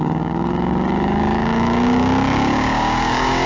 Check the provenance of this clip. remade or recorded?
remade